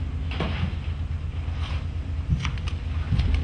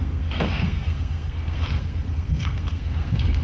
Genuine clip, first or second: first